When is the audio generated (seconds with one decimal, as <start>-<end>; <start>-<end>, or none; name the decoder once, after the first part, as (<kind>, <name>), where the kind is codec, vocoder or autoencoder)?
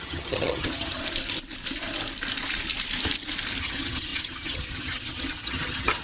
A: 0.0-1.0 (vocoder, HiFi-GAN); 3.6-6.0